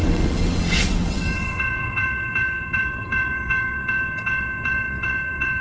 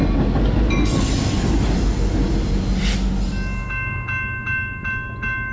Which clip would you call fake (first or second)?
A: first